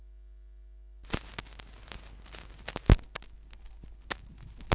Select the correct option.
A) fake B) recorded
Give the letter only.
B